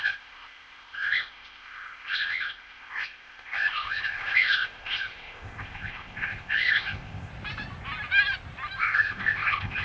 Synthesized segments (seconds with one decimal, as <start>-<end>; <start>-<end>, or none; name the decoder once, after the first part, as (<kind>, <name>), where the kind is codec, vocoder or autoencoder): 0.0-7.3 (codec, ZipCodec); 8.8-9.8